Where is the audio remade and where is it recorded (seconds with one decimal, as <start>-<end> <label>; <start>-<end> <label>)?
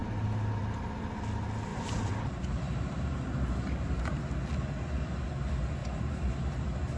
0.0-1.7 recorded; 1.7-4.2 remade; 4.2-5.8 recorded; 5.8-6.6 remade; 6.6-7.0 recorded